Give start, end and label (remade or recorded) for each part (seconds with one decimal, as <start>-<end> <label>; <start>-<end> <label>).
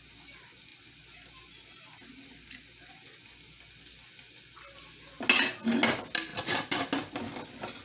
0.0-7.8 recorded